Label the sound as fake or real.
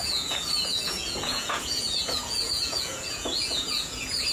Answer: fake